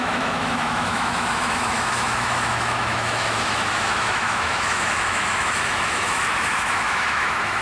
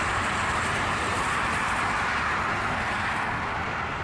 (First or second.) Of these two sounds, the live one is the second